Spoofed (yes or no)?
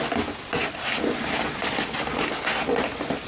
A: no